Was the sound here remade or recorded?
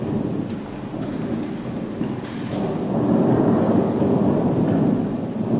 remade